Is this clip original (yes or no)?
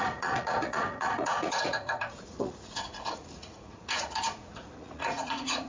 no